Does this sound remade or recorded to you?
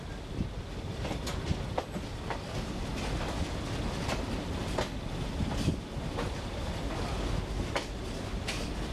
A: recorded